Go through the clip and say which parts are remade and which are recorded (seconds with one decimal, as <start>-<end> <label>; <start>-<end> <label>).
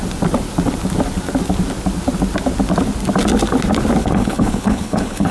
0.0-4.0 recorded; 4.0-5.3 remade